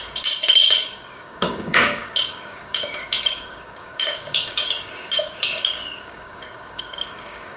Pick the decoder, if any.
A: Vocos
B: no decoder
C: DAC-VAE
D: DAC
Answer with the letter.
D